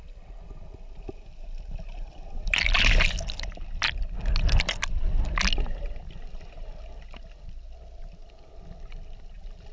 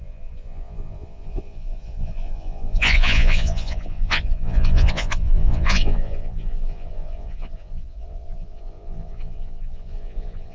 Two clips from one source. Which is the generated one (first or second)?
second